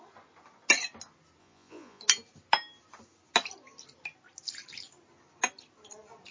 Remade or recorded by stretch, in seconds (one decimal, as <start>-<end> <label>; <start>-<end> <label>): 0.0-1.4 recorded; 1.4-2.0 remade; 2.0-6.3 recorded